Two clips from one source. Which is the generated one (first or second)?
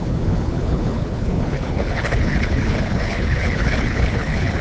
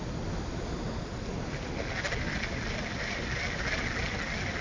first